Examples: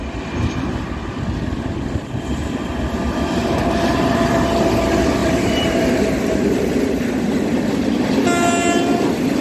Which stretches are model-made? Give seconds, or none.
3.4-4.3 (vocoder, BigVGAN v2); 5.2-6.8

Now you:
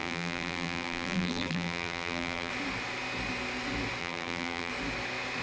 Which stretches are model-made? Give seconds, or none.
0.0-2.5 (vocoder, BigVGAN v2); 4.0-4.7